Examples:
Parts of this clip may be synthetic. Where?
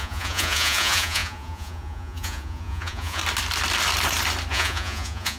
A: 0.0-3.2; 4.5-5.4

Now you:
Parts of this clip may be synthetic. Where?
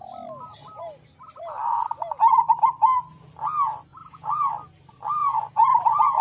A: 3.9-4.5; 5.2-6.2